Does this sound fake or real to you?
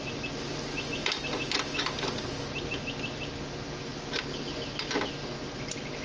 real